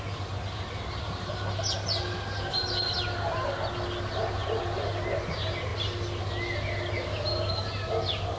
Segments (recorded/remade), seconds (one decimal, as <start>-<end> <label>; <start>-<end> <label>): 0.0-8.4 recorded